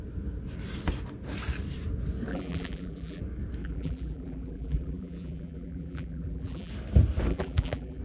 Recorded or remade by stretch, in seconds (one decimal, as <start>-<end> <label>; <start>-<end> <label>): 0.0-2.3 recorded; 2.3-3.2 remade; 3.2-3.6 recorded; 3.6-6.7 remade; 6.7-7.3 recorded; 7.3-8.0 remade